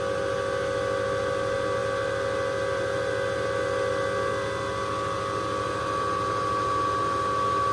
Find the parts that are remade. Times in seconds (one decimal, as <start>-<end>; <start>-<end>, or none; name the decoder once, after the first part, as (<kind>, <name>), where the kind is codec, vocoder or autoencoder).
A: none